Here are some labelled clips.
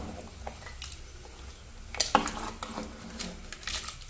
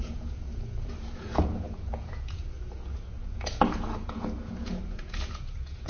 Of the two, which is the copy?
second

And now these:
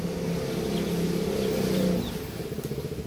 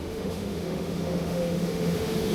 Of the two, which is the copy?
second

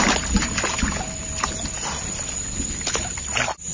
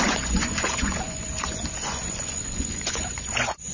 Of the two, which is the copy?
second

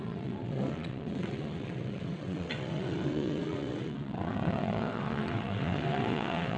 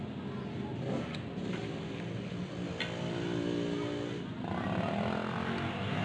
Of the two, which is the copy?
first